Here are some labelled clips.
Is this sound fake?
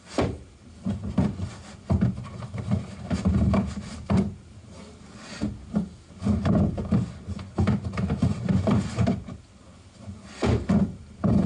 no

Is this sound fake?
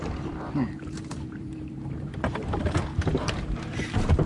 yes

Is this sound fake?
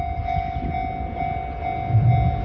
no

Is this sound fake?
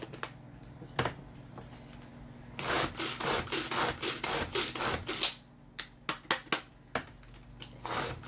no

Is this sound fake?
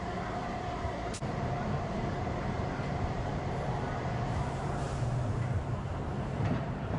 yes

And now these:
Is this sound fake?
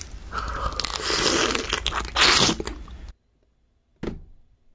no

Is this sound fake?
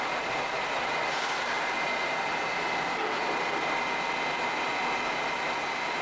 no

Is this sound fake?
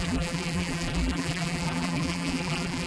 yes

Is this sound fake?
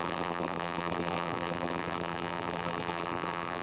yes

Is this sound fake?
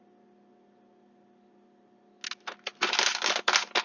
no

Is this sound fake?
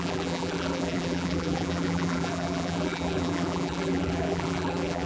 yes